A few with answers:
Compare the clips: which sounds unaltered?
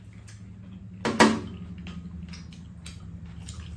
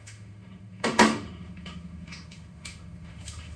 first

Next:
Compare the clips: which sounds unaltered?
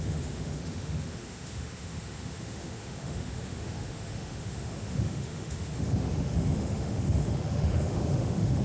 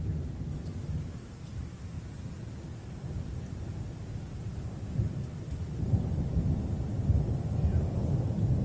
second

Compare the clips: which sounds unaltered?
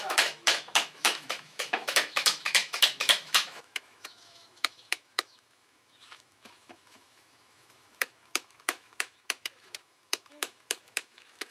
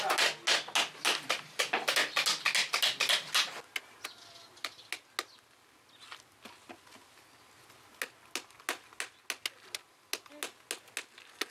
second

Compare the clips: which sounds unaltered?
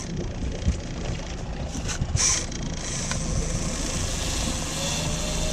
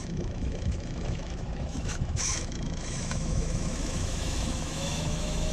first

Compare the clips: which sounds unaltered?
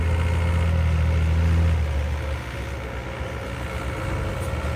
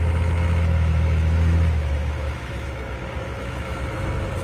first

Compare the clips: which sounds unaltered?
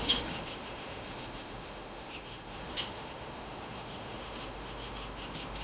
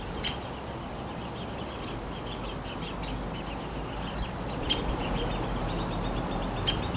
second